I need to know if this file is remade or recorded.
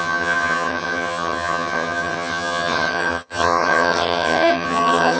remade